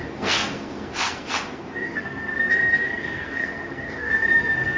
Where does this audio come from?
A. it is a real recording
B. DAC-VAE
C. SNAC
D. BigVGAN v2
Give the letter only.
C